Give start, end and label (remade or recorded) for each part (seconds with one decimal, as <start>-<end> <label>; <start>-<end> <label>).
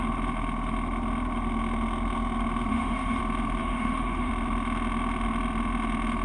0.0-2.7 recorded; 2.7-3.2 remade; 3.2-3.6 recorded; 3.6-4.3 remade; 4.3-6.2 recorded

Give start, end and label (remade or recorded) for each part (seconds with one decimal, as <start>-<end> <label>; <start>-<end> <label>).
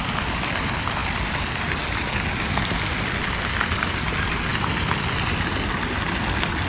0.0-6.7 recorded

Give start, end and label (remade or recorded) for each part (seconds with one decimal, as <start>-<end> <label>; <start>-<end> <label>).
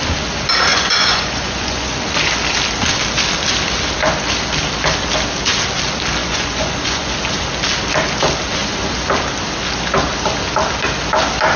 0.0-0.7 recorded; 0.7-2.0 remade; 2.0-6.2 recorded; 6.2-7.1 remade; 7.1-11.6 recorded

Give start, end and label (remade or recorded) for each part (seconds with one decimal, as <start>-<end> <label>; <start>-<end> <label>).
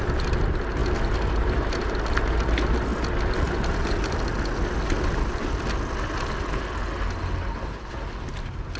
0.0-8.8 recorded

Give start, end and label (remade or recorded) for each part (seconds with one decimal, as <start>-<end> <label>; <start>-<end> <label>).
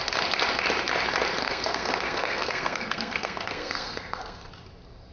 0.0-1.4 recorded; 1.4-4.5 remade; 4.5-5.1 recorded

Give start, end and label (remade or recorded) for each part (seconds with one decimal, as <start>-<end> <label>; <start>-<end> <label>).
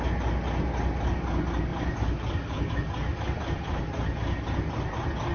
0.0-1.7 recorded; 1.7-2.7 remade; 2.7-3.1 recorded; 3.1-3.8 remade; 3.8-5.3 recorded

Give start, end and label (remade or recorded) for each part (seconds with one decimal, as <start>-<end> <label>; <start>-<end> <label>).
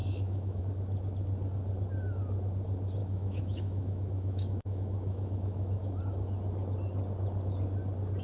0.0-0.6 remade; 0.6-3.0 recorded; 3.0-6.0 remade; 6.0-8.2 recorded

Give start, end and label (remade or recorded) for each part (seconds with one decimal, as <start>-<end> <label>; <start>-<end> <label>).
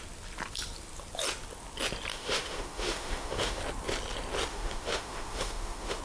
0.0-2.1 recorded; 2.1-3.6 remade; 3.6-4.5 recorded; 4.5-6.0 remade